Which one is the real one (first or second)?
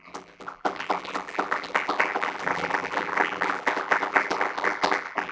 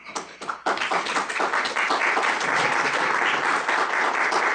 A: second